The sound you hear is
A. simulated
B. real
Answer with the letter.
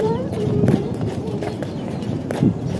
A